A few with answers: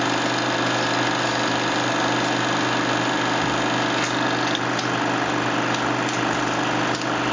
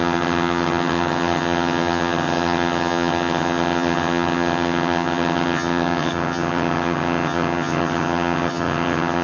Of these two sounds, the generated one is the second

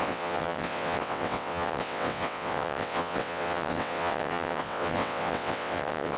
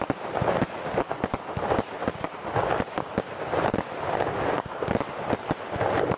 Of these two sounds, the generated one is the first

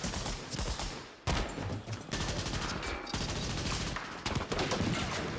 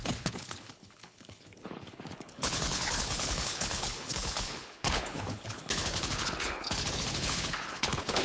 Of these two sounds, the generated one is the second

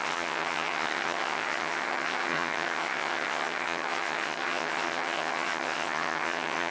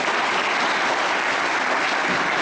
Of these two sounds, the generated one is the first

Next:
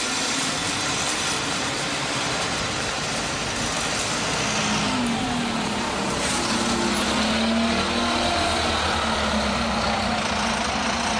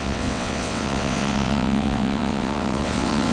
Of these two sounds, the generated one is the second